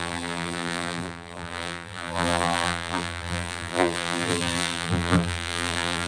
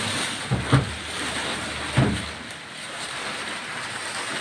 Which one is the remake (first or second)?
first